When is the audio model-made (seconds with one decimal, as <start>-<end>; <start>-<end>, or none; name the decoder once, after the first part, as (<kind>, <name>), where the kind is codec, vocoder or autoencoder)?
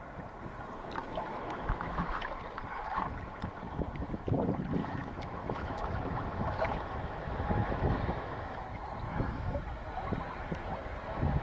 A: 1.0-2.3 (autoencoder, DAC-VAE); 4.8-8.6; 9.1-9.6